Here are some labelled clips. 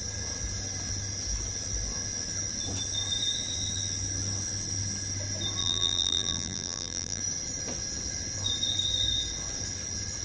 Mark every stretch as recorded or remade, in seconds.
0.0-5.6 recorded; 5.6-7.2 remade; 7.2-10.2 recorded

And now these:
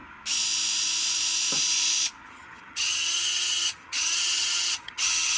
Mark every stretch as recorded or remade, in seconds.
0.0-2.3 recorded; 2.3-5.4 remade

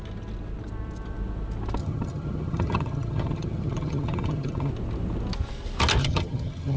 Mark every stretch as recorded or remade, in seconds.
0.0-1.8 recorded; 1.8-4.7 remade; 4.7-6.0 recorded; 6.0-6.8 remade

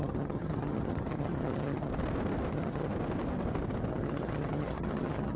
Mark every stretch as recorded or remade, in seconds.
0.0-1.9 remade; 1.9-2.5 recorded; 2.5-2.9 remade; 2.9-3.9 recorded; 3.9-5.4 remade

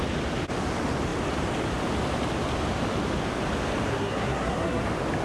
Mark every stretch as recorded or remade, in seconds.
0.0-3.9 recorded; 3.9-4.8 remade; 4.8-5.2 recorded

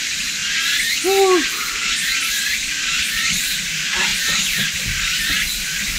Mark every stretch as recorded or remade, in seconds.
0.0-0.4 remade; 0.4-2.4 recorded; 2.4-6.0 remade

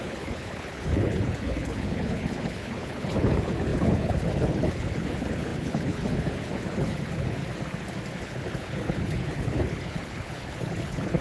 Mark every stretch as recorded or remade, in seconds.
0.0-7.4 remade; 7.4-8.1 recorded; 8.1-11.2 remade